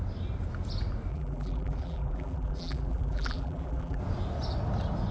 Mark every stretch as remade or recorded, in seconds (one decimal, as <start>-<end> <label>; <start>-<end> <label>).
0.0-1.1 recorded; 1.1-4.0 remade; 4.0-5.1 recorded